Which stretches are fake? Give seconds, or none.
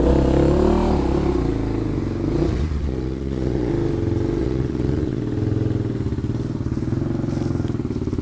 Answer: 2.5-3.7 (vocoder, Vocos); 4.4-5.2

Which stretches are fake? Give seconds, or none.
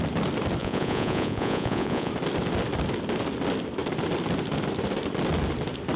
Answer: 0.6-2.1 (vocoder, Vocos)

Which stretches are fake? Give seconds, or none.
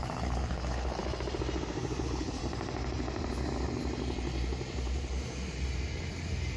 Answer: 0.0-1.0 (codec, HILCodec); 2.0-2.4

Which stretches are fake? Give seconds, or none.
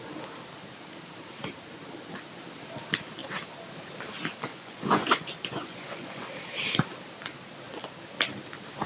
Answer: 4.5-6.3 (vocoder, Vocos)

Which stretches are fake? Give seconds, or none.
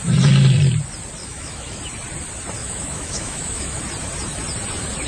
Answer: 1.2-1.8 (autoencoder, DAC-VAE); 2.6-3.8